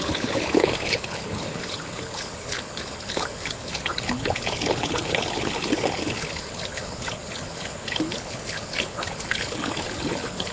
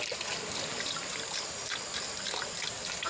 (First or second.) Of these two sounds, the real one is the second